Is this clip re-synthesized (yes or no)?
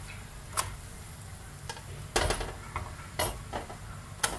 no